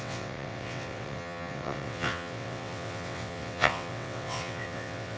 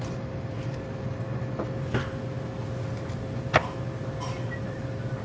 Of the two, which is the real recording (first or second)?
second